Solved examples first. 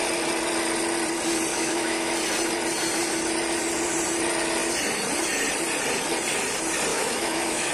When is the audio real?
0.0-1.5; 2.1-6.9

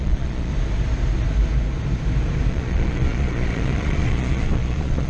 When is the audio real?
0.5-2.5

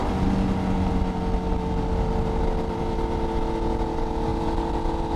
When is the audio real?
0.0-5.2

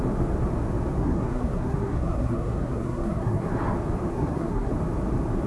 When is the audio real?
0.0-1.0; 3.5-4.1; 4.7-5.5

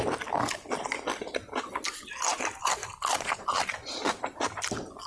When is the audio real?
0.0-5.1

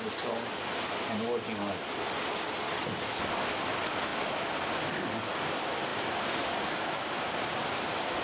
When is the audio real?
0.0-8.2

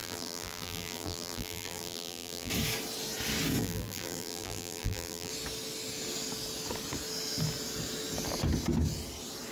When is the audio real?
2.5-3.6; 5.3-9.5

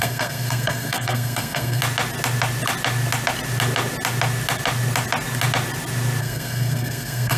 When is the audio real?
1.8-6.2